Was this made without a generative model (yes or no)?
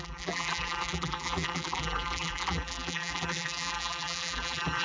no